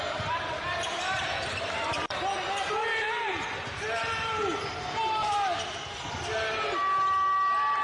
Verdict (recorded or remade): recorded